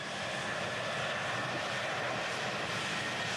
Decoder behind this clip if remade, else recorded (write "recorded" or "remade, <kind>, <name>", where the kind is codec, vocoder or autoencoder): recorded